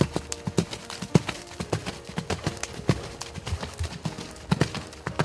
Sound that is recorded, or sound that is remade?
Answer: recorded